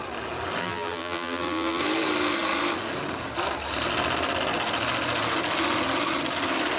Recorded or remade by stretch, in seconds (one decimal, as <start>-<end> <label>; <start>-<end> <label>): 0.0-0.6 recorded; 0.6-1.8 remade; 1.8-6.8 recorded

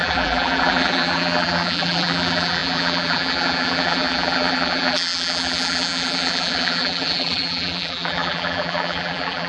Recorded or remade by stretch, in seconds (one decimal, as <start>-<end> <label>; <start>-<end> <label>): 0.0-9.5 remade

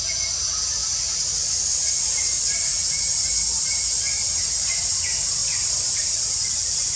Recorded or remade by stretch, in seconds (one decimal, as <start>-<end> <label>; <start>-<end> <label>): 0.0-0.8 recorded; 0.8-1.4 remade; 1.4-2.8 recorded; 2.8-3.8 remade; 3.8-5.4 recorded; 5.4-7.0 remade

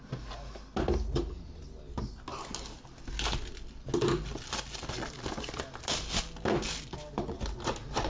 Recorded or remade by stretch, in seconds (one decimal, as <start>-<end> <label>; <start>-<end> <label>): 0.0-8.1 recorded

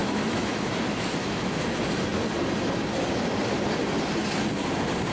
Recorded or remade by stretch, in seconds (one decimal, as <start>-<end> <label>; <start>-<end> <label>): 0.0-0.7 remade; 0.7-1.2 recorded; 1.2-1.7 remade; 1.7-5.1 recorded

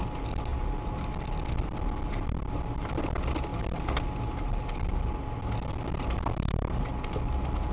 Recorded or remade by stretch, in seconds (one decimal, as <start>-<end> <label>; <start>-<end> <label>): 0.0-7.7 recorded

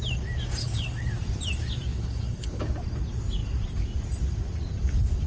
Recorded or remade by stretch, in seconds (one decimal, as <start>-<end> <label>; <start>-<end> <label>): 0.0-0.6 recorded; 0.6-1.1 remade; 1.1-1.9 recorded; 1.9-2.6 remade; 2.6-5.3 recorded